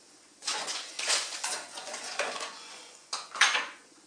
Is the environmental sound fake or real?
fake